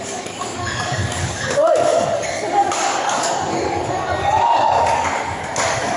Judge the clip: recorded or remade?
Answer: remade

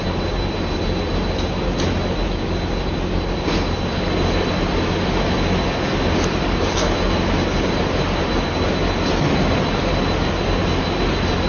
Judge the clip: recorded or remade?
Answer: recorded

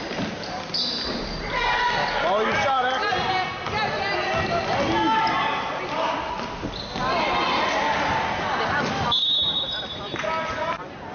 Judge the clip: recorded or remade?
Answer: recorded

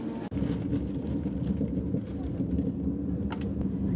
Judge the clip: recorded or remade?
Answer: recorded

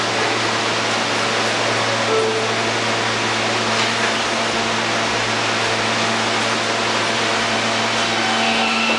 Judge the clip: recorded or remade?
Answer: recorded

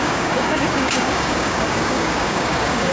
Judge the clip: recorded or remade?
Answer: remade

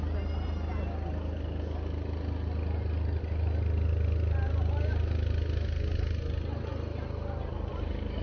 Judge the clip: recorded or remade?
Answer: recorded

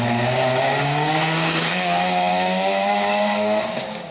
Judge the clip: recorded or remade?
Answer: remade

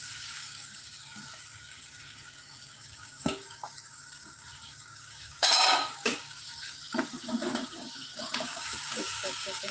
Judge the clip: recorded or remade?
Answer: remade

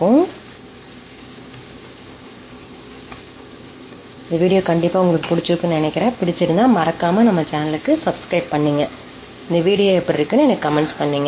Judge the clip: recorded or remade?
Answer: remade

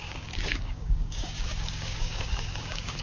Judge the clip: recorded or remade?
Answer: remade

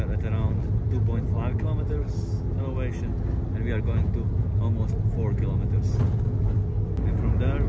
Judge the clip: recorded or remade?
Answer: recorded